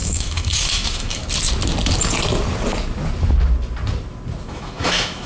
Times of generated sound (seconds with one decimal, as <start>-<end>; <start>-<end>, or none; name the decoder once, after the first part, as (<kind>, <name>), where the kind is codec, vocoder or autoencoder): 0.0-1.2 (autoencoder, DAC-VAE); 4.4-5.3